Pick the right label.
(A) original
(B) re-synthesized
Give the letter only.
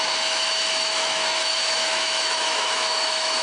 B